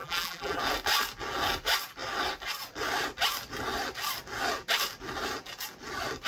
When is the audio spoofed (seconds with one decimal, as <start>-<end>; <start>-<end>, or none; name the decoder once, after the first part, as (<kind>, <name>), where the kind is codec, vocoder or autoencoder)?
0.0-0.6 (vocoder, BigVGAN v2)